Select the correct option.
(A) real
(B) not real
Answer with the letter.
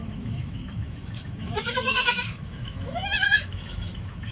B